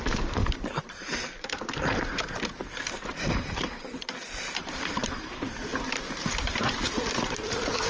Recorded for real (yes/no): no